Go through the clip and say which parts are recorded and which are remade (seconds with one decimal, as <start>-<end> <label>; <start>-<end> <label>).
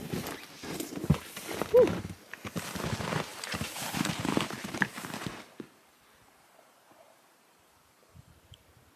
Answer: 0.0-3.3 recorded; 3.3-8.3 remade; 8.3-9.0 recorded